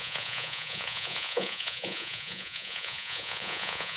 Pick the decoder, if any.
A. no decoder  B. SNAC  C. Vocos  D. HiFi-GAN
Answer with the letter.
C